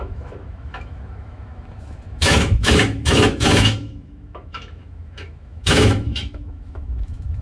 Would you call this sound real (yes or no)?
no